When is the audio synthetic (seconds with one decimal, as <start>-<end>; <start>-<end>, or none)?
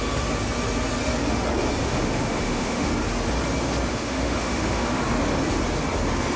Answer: 1.8-2.9; 3.9-5.0